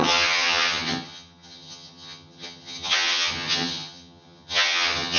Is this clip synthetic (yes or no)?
yes